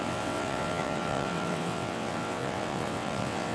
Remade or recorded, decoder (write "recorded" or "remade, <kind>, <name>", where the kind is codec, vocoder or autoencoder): remade, vocoder, WaveNeXt